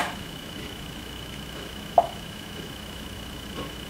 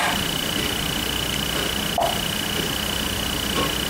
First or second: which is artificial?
first